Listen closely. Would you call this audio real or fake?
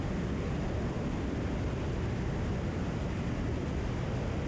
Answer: real